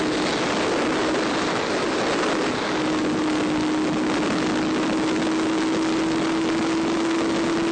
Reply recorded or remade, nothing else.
recorded